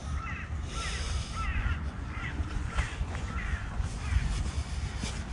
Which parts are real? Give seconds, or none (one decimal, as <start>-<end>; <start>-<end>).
0.0-1.5; 4.7-5.3